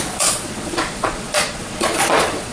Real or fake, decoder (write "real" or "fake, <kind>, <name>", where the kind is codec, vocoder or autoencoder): fake, vocoder, Vocos